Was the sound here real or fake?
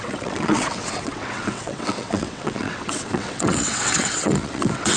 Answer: fake